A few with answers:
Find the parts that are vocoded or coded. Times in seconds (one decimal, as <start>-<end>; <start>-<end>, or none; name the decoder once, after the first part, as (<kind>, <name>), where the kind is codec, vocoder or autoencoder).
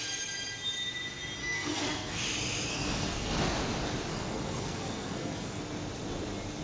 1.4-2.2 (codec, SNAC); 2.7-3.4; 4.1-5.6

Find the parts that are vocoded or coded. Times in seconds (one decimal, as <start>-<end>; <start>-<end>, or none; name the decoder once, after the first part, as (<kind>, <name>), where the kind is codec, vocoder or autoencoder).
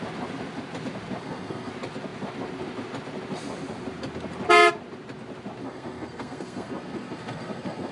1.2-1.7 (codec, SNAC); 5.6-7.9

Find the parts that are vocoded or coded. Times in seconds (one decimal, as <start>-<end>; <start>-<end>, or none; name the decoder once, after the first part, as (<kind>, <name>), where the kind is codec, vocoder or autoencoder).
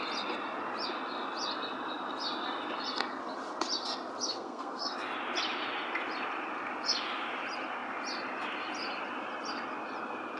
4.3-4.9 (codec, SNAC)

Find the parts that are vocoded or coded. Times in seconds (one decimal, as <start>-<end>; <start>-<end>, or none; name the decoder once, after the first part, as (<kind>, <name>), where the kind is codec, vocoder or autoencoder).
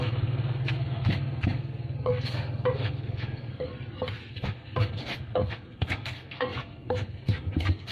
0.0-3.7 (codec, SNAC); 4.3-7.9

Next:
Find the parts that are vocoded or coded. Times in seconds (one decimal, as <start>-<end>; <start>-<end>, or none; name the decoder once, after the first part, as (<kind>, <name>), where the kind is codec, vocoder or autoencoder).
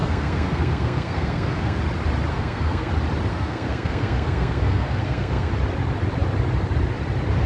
0.0-1.8 (codec, SNAC); 2.3-2.9; 3.3-5.5